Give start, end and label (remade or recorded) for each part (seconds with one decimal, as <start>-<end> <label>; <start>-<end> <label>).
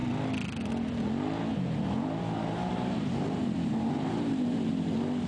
0.0-1.5 recorded; 1.5-4.7 remade; 4.7-5.3 recorded